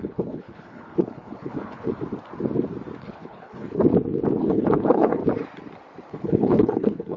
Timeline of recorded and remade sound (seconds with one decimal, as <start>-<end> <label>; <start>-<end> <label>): 0.0-1.9 remade; 1.9-3.0 recorded; 3.0-3.8 remade; 3.8-4.4 recorded; 4.4-5.2 remade; 5.2-6.1 recorded; 6.1-7.2 remade